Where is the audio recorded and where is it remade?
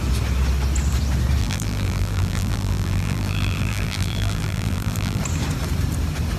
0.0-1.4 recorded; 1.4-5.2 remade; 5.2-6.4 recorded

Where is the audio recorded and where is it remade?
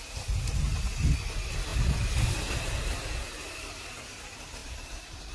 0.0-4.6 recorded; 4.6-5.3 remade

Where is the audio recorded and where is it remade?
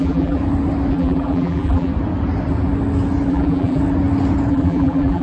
0.0-0.4 remade; 0.4-0.9 recorded; 0.9-1.9 remade; 1.9-3.3 recorded; 3.3-3.8 remade; 3.8-4.5 recorded; 4.5-5.2 remade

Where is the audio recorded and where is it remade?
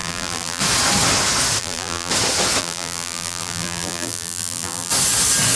0.0-0.6 remade; 0.6-1.6 recorded; 1.6-2.1 remade; 2.1-2.6 recorded; 2.6-4.9 remade; 4.9-5.6 recorded